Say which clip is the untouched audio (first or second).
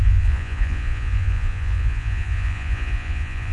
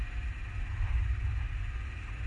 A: second